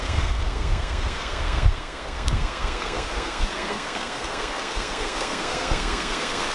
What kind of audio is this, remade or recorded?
remade